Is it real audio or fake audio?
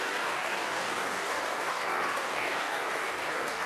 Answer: fake